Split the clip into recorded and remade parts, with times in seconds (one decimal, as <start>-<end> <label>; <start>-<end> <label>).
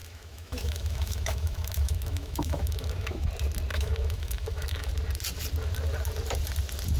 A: 0.0-3.3 remade; 3.3-3.7 recorded; 3.7-4.9 remade; 4.9-7.0 recorded